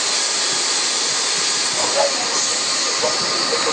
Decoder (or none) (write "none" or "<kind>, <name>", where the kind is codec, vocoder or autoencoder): none